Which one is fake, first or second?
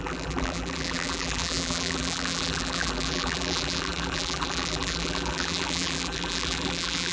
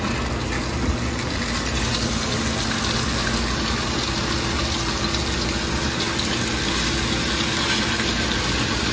first